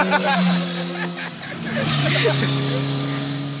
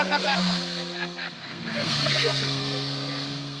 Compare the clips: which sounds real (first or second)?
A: first